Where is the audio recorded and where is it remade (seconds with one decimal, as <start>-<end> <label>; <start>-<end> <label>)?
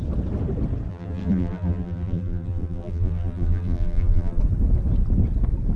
0.0-0.9 recorded; 0.9-4.4 remade; 4.4-5.8 recorded